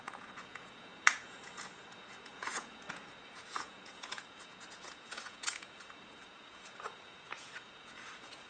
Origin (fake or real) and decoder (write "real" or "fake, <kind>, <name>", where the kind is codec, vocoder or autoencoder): fake, vocoder, Vocos